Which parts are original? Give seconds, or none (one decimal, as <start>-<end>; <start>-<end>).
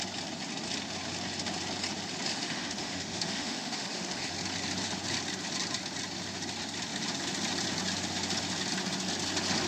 0.0-2.3; 4.3-9.7